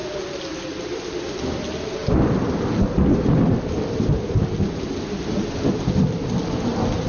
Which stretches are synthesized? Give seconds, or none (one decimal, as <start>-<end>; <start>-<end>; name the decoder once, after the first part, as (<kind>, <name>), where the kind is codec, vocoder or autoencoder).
none